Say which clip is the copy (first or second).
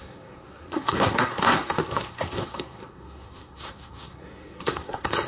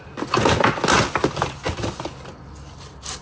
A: first